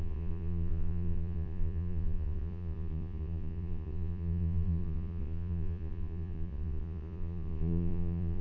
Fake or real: fake